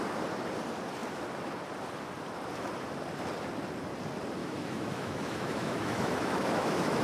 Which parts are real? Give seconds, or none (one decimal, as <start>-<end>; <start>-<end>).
0.0-4.4